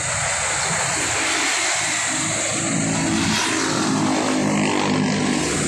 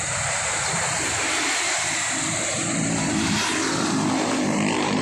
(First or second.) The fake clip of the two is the second